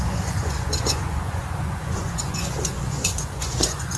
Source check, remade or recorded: remade